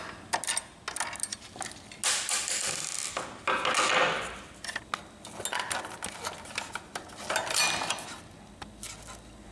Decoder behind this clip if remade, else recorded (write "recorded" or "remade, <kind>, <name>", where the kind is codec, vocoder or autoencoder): recorded